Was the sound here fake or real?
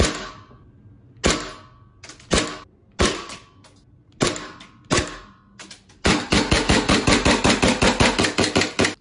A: real